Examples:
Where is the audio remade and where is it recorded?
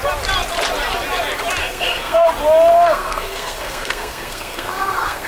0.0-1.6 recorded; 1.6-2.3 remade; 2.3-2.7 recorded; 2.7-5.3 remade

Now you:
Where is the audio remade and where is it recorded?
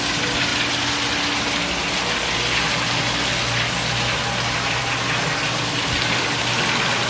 0.0-7.1 recorded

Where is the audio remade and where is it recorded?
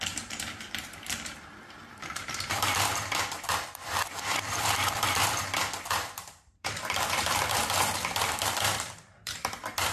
0.0-9.9 remade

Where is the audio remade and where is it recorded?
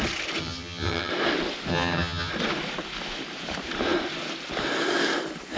0.0-0.4 recorded; 0.4-1.1 remade; 1.1-1.7 recorded; 1.7-2.3 remade; 2.3-5.6 recorded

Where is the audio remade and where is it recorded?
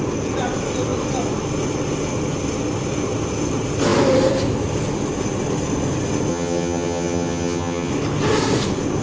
0.0-6.3 recorded; 6.3-7.9 remade; 7.9-9.0 recorded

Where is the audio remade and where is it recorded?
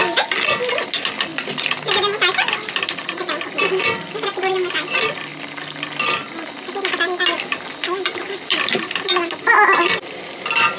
0.0-10.8 recorded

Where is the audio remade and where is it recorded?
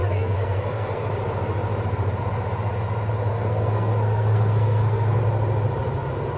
0.0-1.1 remade; 1.1-3.3 recorded; 3.3-5.2 remade; 5.2-6.4 recorded